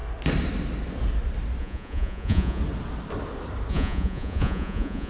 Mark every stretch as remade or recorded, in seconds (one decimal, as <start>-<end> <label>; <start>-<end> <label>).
0.0-1.6 recorded; 1.6-2.6 remade; 2.6-3.7 recorded; 3.7-5.1 remade

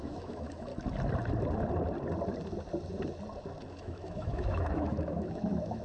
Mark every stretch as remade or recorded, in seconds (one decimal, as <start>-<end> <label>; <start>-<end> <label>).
0.0-0.7 remade; 0.7-3.7 recorded; 3.7-5.8 remade

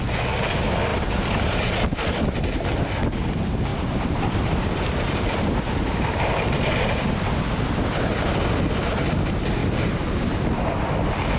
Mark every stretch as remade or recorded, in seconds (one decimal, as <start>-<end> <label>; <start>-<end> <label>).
0.0-0.9 recorded; 0.9-2.1 remade; 2.1-3.7 recorded; 3.7-6.8 remade; 6.8-11.4 recorded

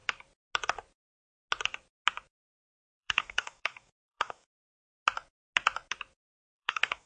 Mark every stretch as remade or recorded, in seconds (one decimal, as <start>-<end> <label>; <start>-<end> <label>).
0.0-2.9 recorded; 2.9-4.7 remade; 4.7-6.4 recorded; 6.4-7.1 remade

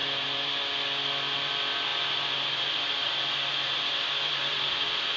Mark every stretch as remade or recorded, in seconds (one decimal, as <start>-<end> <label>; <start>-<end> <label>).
0.0-0.6 remade; 0.6-1.9 recorded; 1.9-5.2 remade

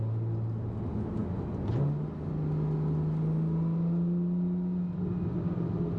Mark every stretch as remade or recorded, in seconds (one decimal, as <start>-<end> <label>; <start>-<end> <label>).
0.0-6.0 recorded